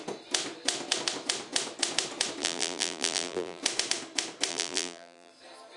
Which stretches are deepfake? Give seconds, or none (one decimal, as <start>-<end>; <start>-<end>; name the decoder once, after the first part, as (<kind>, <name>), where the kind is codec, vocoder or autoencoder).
2.4-3.6 (vocoder, BigVGAN v2); 4.5-5.3